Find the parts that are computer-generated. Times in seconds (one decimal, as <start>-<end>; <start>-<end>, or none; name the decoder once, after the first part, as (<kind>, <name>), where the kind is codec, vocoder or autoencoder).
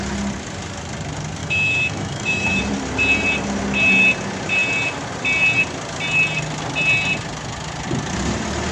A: 1.4-2.6 (autoencoder, DAC-VAE)